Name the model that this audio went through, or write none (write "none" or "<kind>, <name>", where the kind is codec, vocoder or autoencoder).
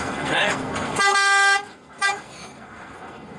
codec, SNAC